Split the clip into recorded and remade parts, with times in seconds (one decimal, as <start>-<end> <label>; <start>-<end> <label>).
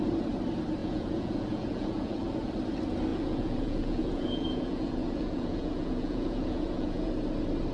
0.0-0.8 recorded; 0.8-2.5 remade; 2.5-3.1 recorded; 3.1-7.1 remade; 7.1-7.7 recorded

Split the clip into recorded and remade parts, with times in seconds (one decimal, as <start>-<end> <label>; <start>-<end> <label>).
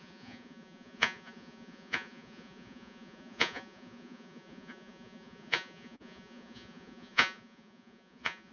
0.0-8.5 remade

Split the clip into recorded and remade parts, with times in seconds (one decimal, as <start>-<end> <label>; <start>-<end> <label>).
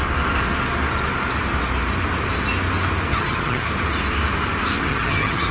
0.0-3.1 recorded; 3.1-3.7 remade; 3.7-4.9 recorded; 4.9-5.5 remade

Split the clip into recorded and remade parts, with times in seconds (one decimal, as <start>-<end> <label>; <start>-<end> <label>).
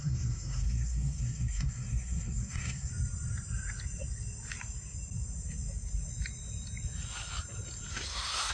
0.0-2.9 remade; 2.9-7.9 recorded; 7.9-8.5 remade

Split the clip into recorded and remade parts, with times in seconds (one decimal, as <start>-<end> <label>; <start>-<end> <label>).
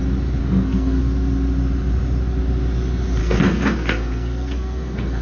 0.0-0.4 recorded; 0.4-1.0 remade; 1.0-3.2 recorded; 3.2-5.2 remade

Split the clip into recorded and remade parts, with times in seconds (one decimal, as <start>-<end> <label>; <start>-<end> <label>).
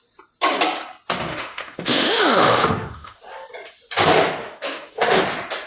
0.0-1.3 recorded; 1.3-3.2 remade; 3.2-4.4 recorded; 4.4-5.2 remade; 5.2-5.7 recorded